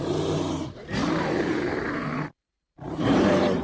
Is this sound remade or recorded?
remade